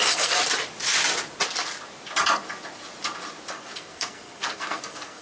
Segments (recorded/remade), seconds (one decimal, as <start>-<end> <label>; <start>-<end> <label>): 0.0-0.4 remade; 0.4-3.5 recorded; 3.5-5.2 remade